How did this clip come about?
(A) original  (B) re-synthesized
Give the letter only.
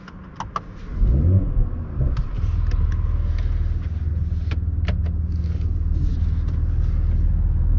A